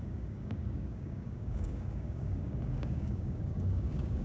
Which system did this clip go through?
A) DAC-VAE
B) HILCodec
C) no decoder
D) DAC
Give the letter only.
D